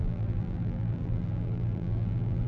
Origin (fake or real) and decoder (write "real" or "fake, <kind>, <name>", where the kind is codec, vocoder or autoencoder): fake, vocoder, BigVGAN v2